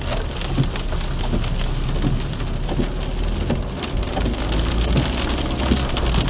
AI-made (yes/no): no